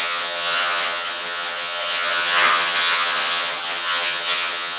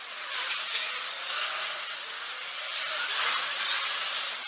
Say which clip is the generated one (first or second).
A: first